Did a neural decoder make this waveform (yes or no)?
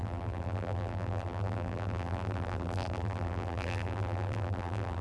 yes